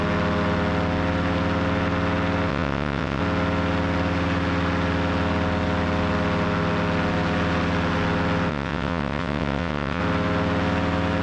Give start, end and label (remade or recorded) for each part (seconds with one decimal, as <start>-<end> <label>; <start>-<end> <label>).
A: 0.0-2.5 recorded; 2.5-3.2 remade; 3.2-8.5 recorded; 8.5-10.0 remade; 10.0-11.2 recorded